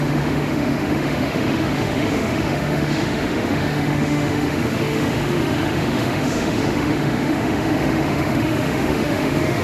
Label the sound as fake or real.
fake